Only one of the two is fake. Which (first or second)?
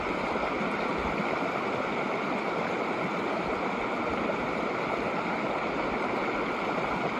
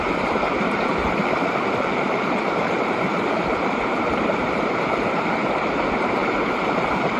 second